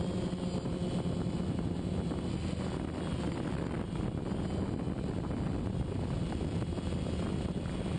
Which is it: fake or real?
real